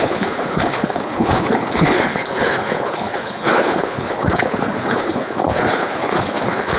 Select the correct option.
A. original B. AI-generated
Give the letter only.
B